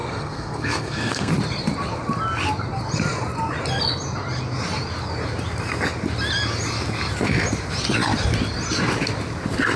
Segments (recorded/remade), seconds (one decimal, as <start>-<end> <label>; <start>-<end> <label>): 0.0-1.3 remade; 1.3-9.8 recorded